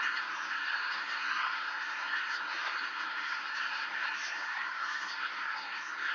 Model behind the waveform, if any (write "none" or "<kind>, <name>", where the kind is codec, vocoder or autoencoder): codec, SNAC